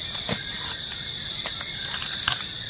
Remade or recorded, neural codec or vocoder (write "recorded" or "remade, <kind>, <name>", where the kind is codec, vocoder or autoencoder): recorded